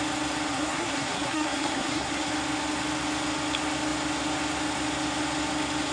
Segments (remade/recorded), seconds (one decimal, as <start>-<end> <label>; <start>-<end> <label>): 0.0-0.5 recorded; 0.5-2.3 remade; 2.3-5.9 recorded